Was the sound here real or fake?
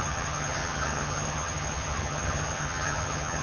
fake